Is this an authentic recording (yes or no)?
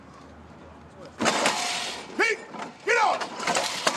yes